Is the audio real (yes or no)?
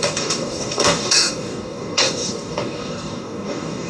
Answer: no